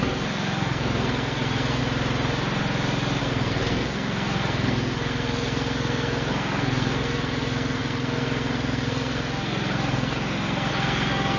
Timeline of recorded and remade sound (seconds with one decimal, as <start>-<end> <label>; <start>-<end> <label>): 0.0-1.8 remade; 1.8-3.2 recorded; 3.2-11.4 remade

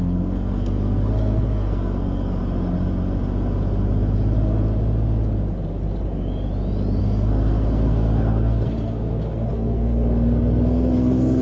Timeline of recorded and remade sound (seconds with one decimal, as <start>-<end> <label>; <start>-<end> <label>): 0.0-2.4 remade; 2.4-7.0 recorded; 7.0-11.4 remade

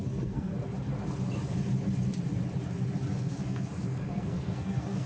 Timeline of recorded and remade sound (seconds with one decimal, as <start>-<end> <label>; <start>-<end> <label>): 0.0-0.5 remade; 0.5-3.1 recorded; 3.1-5.1 remade

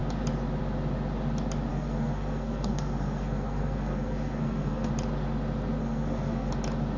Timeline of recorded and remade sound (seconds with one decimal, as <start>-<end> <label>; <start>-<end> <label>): 0.0-1.7 recorded; 1.7-4.9 remade; 4.9-5.8 recorded; 5.8-6.5 remade; 6.5-7.0 recorded